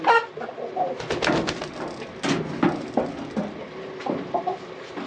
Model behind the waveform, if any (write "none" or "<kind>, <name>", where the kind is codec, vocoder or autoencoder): none